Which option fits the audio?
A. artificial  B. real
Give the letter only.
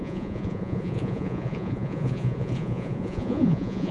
A